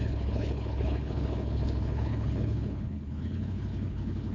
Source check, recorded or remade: remade